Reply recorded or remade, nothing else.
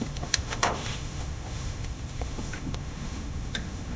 remade